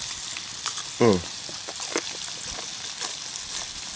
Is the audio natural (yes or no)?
yes